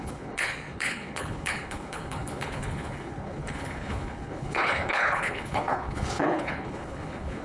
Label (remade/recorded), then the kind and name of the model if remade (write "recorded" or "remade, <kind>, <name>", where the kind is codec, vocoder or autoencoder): remade, codec, HILCodec